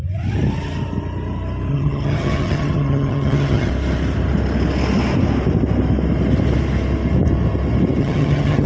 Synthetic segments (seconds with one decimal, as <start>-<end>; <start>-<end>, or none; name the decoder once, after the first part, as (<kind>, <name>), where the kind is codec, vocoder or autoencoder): 1.7-3.7 (vocoder, HiFi-GAN); 8.0-8.7